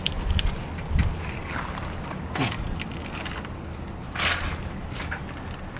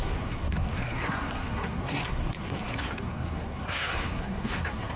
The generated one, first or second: second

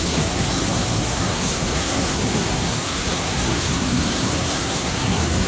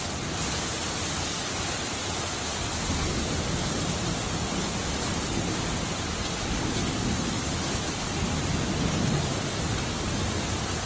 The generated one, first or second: first